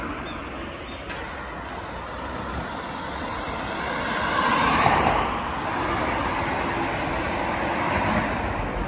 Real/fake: real